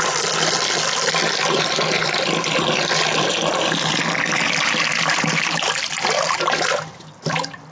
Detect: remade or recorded recorded